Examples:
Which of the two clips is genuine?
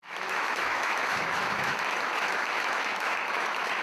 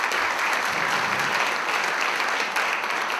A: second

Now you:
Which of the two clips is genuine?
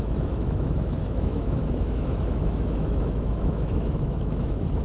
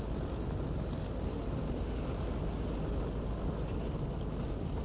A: second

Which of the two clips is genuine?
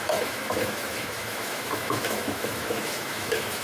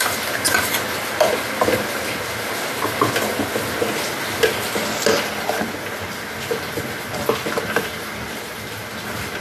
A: second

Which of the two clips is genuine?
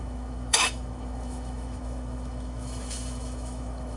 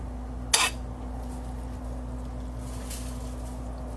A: second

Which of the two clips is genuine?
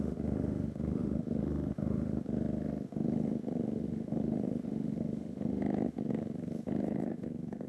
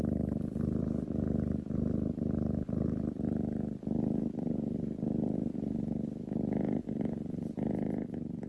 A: second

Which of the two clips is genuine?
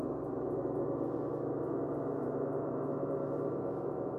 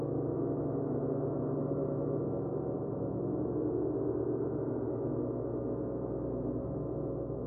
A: first